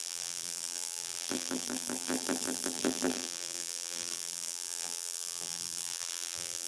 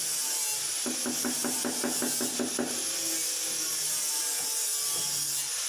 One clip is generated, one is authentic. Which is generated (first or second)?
first